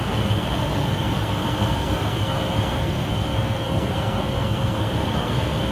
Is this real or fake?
fake